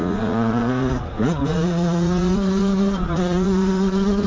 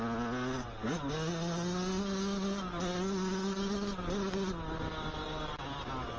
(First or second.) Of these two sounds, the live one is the second